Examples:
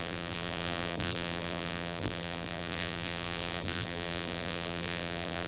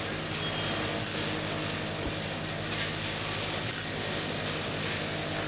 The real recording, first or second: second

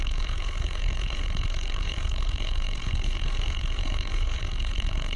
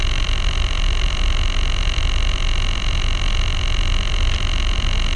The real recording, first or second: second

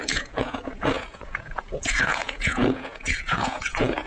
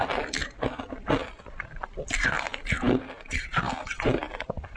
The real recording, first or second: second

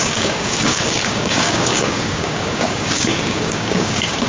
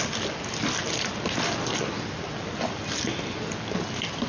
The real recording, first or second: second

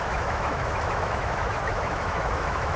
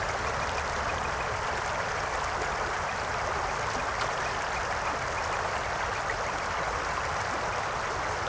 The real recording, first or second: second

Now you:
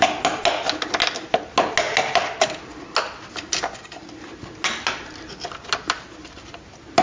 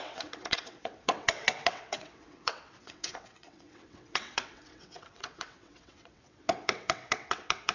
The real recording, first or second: first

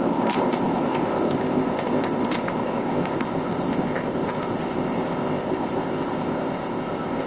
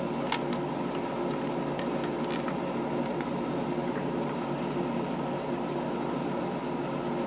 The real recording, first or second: second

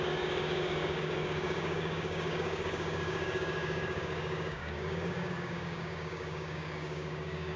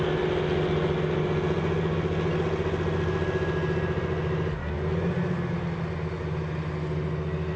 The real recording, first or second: second